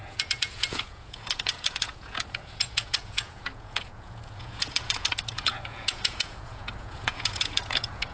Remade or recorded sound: remade